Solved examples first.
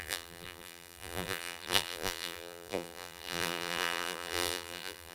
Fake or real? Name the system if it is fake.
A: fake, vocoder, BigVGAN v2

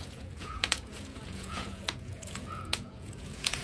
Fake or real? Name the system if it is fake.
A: fake, vocoder, Vocos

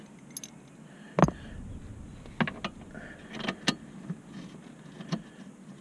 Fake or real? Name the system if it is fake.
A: real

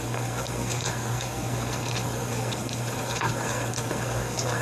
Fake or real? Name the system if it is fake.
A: fake, codec, SNAC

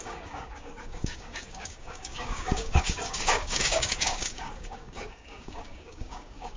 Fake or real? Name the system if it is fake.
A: fake, codec, DAC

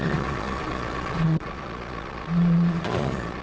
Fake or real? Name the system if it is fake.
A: fake, vocoder, Vocos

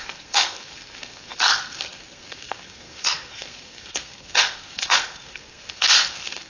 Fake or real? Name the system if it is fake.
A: fake, codec, SNAC